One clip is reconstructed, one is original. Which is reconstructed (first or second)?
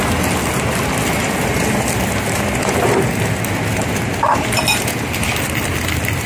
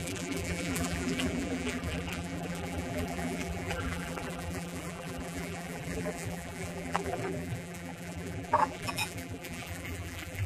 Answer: second